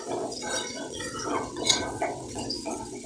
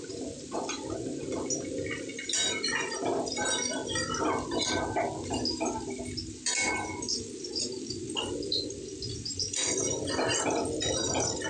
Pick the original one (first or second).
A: second